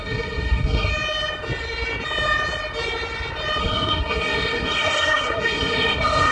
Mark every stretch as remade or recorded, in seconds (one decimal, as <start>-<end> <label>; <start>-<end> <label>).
0.0-0.9 remade; 0.9-3.6 recorded; 3.6-6.3 remade

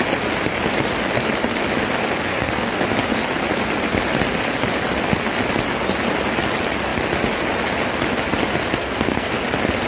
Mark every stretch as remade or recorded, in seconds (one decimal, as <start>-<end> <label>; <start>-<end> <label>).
0.0-2.3 recorded; 2.3-2.8 remade; 2.8-8.8 recorded; 8.8-9.3 remade; 9.3-9.9 recorded

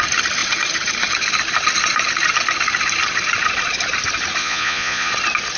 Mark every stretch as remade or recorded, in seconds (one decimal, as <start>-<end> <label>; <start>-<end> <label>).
0.0-4.4 recorded; 4.4-5.1 remade; 5.1-5.6 recorded

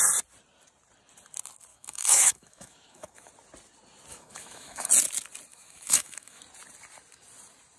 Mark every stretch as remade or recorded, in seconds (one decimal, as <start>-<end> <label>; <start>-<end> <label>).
0.0-1.7 recorded; 1.7-3.3 remade; 3.3-4.1 recorded; 4.1-4.9 remade; 4.9-5.5 recorded; 5.5-6.4 remade; 6.4-7.8 recorded

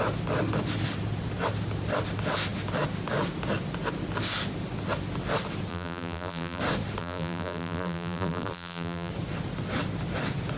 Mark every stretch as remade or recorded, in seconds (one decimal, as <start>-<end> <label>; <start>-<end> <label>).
0.0-5.7 recorded; 5.7-6.6 remade; 6.6-7.0 recorded; 7.0-9.1 remade; 9.1-10.6 recorded

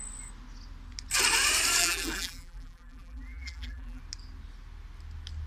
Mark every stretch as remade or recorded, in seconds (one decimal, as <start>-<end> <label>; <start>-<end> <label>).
0.0-1.8 recorded; 1.8-4.0 remade; 4.0-5.5 recorded

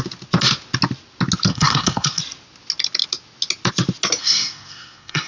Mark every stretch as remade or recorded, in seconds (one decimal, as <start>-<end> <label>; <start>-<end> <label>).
0.0-1.5 recorded; 1.5-2.2 remade; 2.2-4.2 recorded; 4.2-5.3 remade

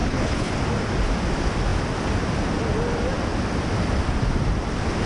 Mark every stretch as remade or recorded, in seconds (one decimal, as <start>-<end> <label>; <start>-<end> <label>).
0.0-0.5 remade; 0.5-5.1 recorded